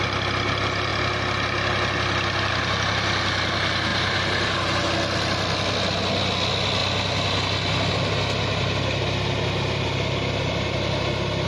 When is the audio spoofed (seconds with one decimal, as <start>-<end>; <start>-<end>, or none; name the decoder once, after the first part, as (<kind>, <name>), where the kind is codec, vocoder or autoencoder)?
3.9-4.9 (vocoder, BigVGAN v2)